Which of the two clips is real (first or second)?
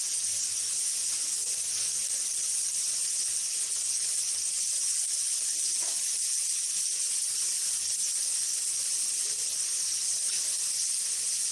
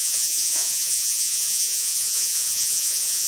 first